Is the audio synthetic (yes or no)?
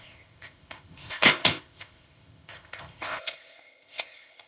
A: yes